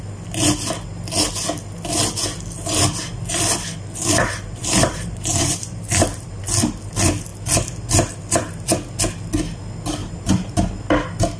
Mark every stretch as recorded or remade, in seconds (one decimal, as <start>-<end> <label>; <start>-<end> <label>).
0.0-4.2 recorded; 4.2-6.4 remade; 6.4-10.0 recorded; 10.0-10.7 remade; 10.7-11.4 recorded